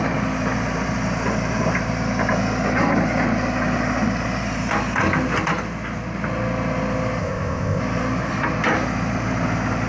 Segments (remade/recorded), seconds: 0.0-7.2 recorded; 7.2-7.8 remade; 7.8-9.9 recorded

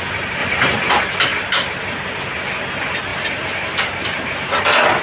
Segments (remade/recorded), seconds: 0.0-5.0 recorded

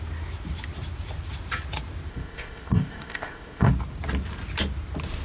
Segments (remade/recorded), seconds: 0.0-2.1 recorded; 2.1-3.7 remade; 3.7-5.2 recorded

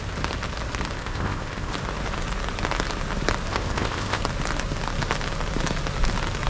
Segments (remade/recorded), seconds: 0.0-1.0 recorded; 1.0-1.7 remade; 1.7-3.5 recorded; 3.5-4.2 remade; 4.2-6.5 recorded